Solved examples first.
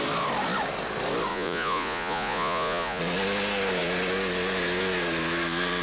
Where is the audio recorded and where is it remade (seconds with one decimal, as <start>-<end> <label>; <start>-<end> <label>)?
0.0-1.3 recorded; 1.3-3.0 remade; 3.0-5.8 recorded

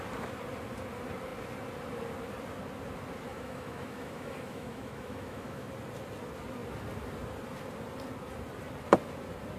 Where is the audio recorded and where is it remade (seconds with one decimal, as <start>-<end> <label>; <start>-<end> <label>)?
0.0-3.3 recorded; 3.3-5.7 remade; 5.7-9.6 recorded

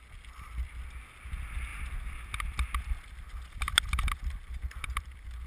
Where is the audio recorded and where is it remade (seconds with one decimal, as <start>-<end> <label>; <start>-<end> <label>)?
0.0-5.5 recorded

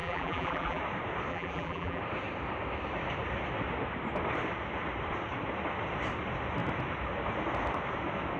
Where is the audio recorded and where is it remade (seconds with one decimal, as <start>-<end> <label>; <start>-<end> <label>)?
0.0-0.8 remade; 0.8-1.3 recorded; 1.3-2.0 remade; 2.0-8.4 recorded

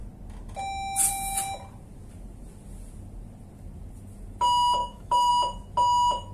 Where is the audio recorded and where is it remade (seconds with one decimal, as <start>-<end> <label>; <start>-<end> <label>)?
0.0-4.8 recorded; 4.8-5.3 remade; 5.3-6.3 recorded

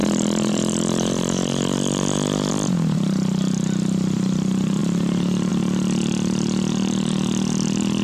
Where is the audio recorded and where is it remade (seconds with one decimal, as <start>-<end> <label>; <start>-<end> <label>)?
0.0-2.5 remade; 2.5-8.0 recorded

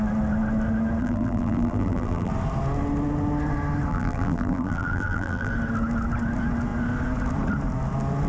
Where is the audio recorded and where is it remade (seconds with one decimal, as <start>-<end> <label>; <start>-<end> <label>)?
0.0-1.0 recorded; 1.0-2.3 remade; 2.3-3.9 recorded; 3.9-5.5 remade; 5.5-8.3 recorded